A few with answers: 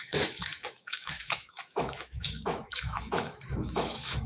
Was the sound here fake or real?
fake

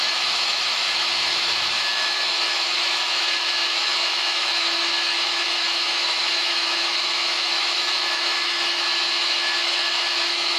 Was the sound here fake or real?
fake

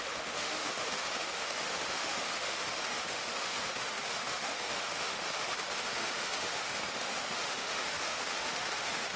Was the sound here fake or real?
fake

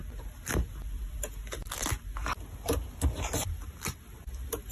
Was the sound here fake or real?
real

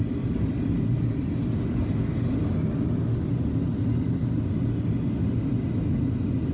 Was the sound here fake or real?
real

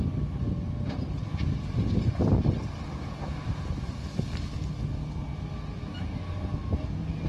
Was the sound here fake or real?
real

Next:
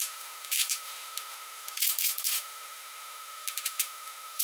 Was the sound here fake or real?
fake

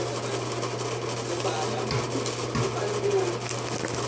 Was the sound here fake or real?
real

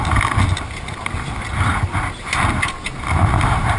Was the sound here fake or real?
real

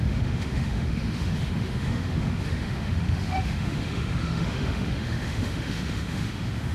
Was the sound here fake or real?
fake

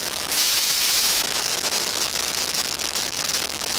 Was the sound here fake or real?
fake